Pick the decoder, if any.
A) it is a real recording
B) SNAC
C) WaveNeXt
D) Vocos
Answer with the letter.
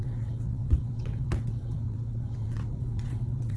C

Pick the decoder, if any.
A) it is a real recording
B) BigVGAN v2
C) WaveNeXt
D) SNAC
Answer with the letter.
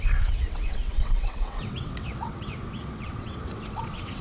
C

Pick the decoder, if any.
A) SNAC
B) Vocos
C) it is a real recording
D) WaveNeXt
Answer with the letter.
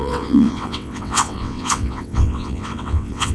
D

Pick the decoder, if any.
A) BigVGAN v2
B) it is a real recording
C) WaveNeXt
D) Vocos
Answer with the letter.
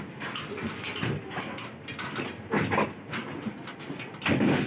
B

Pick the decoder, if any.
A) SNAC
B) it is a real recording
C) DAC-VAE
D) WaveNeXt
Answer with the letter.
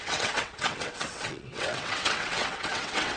D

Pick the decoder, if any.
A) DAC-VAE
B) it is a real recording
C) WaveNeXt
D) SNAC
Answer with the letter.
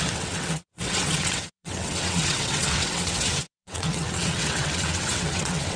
C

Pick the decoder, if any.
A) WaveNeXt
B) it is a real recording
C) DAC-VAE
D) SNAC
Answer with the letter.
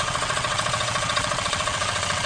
A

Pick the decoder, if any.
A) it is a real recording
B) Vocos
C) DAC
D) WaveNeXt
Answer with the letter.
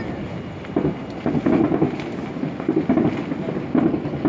A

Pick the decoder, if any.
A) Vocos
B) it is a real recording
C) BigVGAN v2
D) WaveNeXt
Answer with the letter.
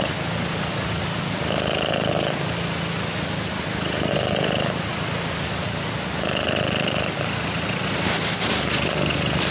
B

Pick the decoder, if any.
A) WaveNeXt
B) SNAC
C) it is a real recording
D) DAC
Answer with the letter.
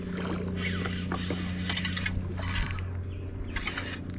C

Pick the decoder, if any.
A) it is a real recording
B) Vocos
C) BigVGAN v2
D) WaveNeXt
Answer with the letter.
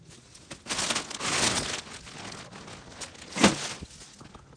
A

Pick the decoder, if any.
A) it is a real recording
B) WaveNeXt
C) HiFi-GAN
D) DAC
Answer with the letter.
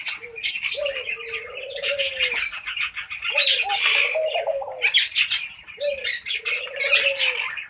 A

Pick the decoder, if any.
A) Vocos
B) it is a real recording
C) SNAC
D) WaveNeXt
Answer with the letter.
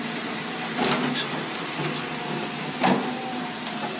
B